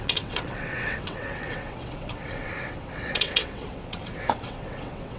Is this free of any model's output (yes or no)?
no